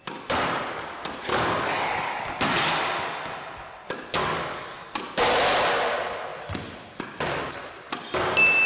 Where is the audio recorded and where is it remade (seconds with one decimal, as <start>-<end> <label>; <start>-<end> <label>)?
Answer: 0.0-1.3 recorded; 1.3-2.2 remade; 2.2-4.2 recorded; 4.2-4.9 remade; 4.9-8.7 recorded